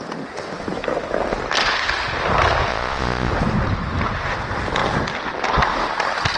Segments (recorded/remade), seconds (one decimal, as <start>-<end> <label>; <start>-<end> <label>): 0.0-2.7 recorded; 2.7-3.3 remade; 3.3-6.4 recorded